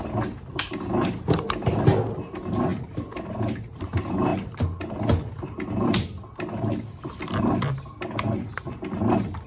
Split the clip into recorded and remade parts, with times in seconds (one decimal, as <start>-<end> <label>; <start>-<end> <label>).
0.0-9.5 recorded